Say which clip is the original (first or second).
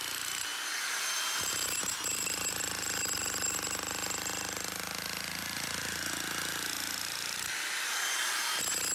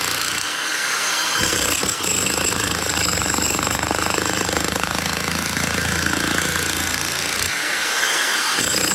first